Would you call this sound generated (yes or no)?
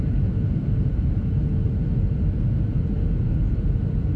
yes